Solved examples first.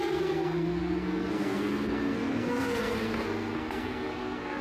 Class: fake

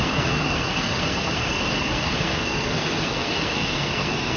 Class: fake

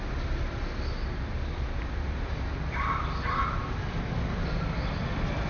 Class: real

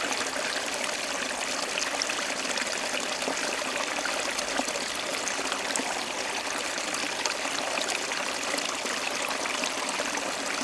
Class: real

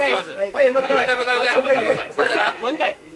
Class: fake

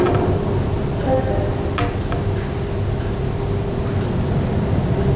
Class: real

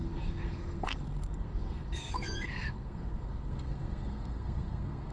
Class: fake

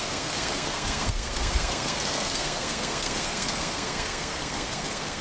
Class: fake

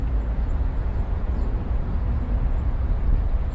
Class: fake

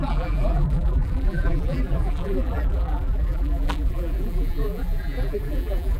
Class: fake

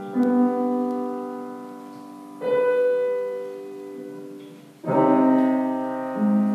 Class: real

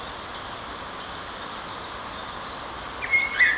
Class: real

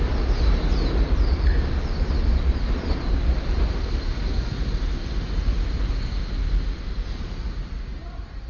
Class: real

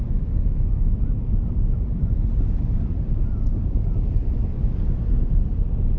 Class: real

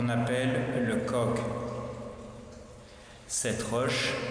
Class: real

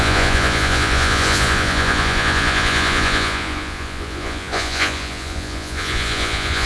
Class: fake